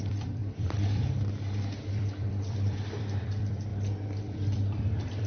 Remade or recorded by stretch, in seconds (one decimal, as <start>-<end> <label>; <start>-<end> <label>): 0.0-0.4 remade; 0.4-1.9 recorded; 1.9-3.7 remade; 3.7-4.2 recorded; 4.2-5.3 remade